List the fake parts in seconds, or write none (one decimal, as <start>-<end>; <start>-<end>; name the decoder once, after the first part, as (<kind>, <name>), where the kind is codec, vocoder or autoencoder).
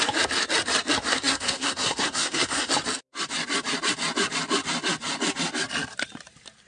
1.1-2.7 (codec, SNAC)